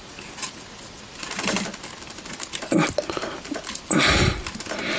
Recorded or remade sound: recorded